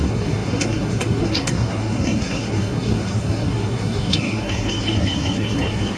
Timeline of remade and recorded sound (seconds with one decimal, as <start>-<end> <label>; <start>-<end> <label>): 0.0-6.0 remade